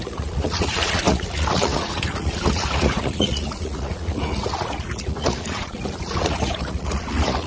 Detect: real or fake fake